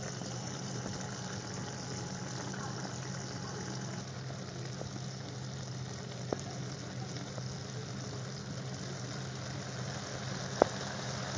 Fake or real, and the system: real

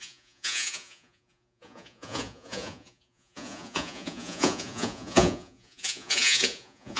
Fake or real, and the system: fake, vocoder, Vocos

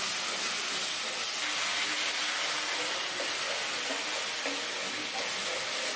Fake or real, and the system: real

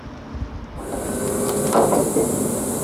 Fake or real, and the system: real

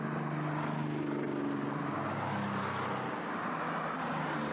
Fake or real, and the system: real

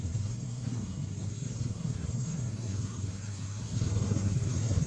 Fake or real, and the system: fake, codec, SNAC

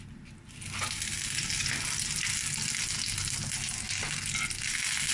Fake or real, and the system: real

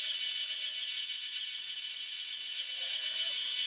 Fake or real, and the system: fake, vocoder, Vocos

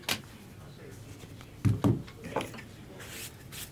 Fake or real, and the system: real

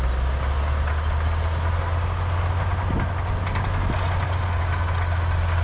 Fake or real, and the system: real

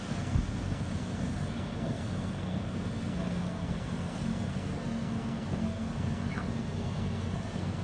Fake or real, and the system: fake, codec, SNAC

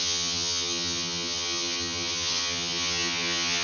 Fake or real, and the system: fake, vocoder, HiFi-GAN